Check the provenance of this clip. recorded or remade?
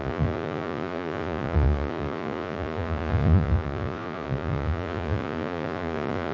remade